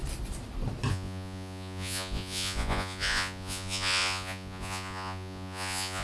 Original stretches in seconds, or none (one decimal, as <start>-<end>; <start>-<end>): 0.0-0.9